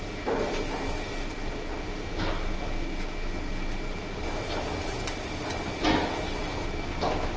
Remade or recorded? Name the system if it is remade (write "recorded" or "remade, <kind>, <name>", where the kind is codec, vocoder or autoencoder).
recorded